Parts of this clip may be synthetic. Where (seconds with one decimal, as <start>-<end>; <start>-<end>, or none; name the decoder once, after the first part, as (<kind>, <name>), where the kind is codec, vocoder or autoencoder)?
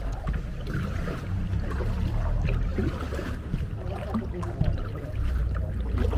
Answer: none